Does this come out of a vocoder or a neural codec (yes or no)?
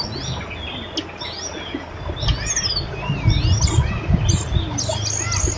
no